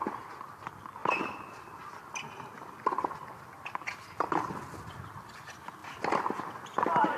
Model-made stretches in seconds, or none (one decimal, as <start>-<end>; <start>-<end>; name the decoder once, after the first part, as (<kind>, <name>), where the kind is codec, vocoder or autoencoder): none